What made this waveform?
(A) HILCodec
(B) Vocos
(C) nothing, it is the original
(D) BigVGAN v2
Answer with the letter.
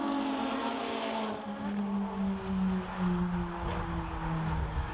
C